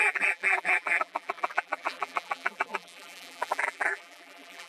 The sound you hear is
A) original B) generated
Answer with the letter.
B